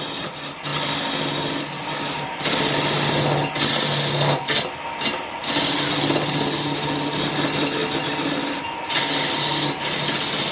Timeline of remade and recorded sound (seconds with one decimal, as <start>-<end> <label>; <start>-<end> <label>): 0.0-10.5 recorded